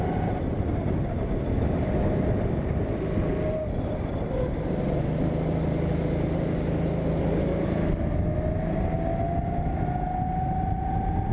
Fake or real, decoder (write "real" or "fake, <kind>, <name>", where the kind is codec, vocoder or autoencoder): real